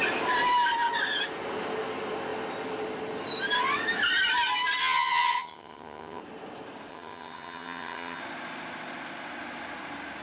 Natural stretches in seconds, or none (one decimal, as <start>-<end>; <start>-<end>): 0.0-4.8; 6.2-6.9; 8.2-10.2